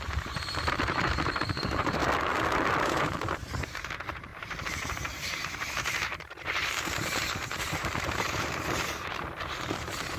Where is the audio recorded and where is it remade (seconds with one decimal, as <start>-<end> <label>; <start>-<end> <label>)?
0.0-2.0 remade; 2.0-2.8 recorded; 2.8-10.2 remade